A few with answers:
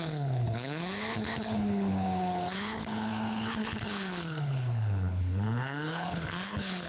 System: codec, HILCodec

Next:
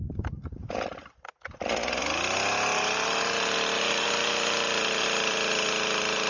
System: none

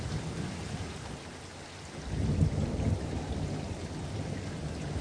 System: none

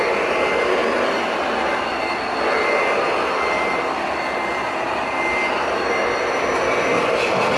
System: none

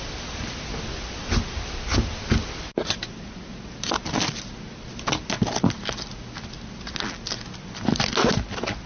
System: none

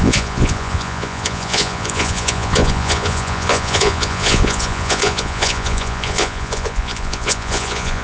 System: vocoder, Vocos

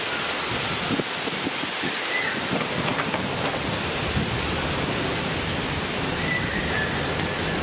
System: none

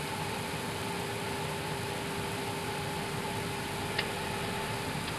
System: none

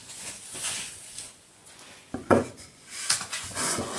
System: vocoder, Vocos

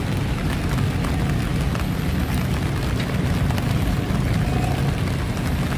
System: none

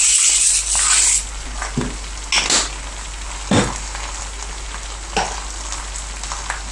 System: none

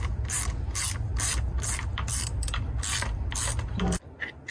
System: vocoder, BigVGAN v2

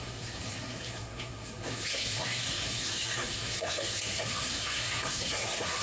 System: codec, SNAC